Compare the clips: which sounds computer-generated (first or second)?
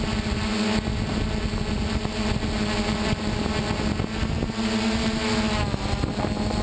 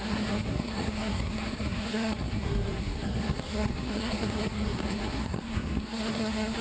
second